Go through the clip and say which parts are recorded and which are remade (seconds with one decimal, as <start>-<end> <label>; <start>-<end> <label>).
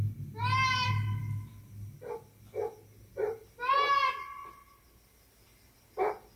0.0-6.4 recorded